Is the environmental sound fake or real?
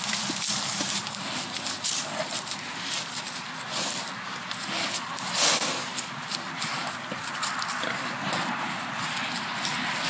real